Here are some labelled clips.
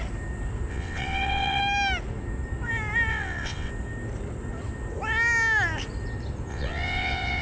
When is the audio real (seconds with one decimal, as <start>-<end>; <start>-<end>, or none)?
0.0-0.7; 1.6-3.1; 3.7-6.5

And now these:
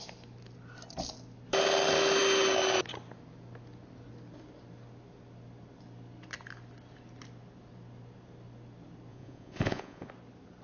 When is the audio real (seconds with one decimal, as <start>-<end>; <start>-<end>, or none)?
0.0-9.1; 10.1-10.6

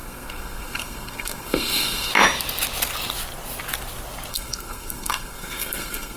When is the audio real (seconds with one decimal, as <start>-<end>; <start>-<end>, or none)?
2.1-4.3

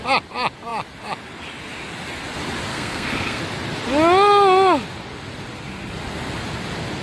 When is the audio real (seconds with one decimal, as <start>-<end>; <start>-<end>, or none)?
0.0-2.7; 3.4-7.0

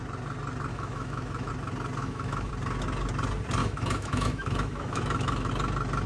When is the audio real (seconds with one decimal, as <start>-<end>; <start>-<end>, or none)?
0.0-0.7; 1.5-2.0; 2.5-3.6; 5.5-6.1

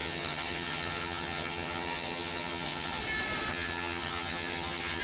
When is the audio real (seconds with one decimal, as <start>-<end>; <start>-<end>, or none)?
3.0-3.5